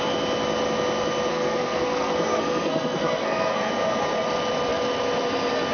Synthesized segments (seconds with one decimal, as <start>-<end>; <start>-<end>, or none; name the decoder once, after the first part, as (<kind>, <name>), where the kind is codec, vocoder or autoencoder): 1.3-3.7 (codec, SNAC)